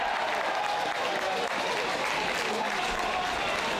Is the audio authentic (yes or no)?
no